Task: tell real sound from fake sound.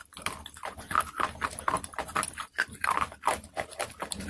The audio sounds fake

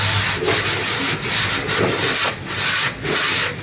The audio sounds real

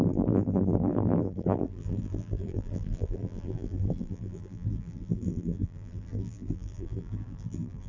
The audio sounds fake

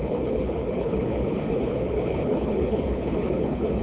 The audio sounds fake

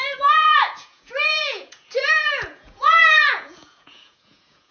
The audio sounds fake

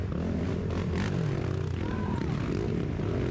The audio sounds real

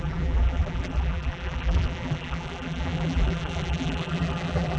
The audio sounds fake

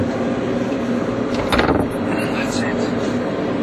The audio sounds real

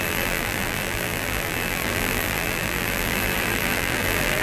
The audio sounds fake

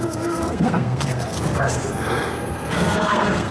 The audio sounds fake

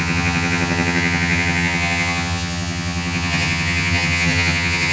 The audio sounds fake